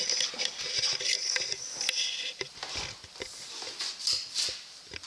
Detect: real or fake real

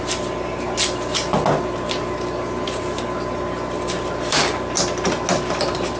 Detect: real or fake real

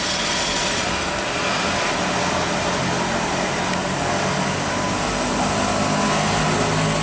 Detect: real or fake real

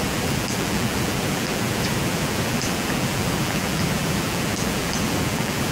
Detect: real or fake fake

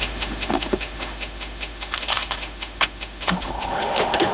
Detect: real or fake fake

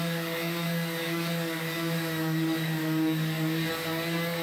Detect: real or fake fake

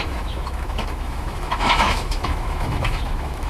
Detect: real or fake fake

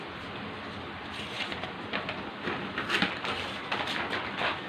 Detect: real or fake real